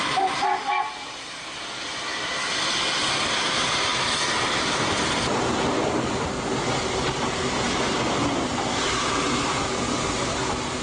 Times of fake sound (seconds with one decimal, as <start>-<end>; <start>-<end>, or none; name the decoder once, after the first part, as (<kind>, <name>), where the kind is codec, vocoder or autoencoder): none